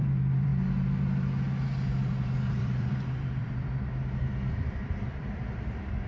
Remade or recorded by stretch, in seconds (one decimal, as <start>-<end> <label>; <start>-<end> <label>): 0.0-0.5 remade; 0.5-2.5 recorded; 2.5-6.1 remade